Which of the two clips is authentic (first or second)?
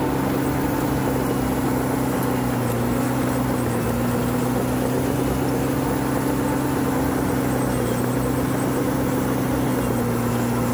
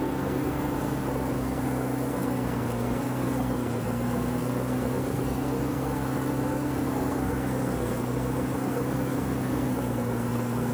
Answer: first